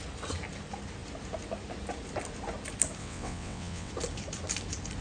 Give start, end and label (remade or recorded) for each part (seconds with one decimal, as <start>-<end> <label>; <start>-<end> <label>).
0.0-3.0 recorded; 3.0-3.9 remade; 3.9-5.0 recorded